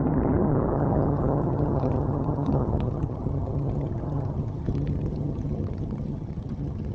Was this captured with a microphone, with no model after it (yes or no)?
no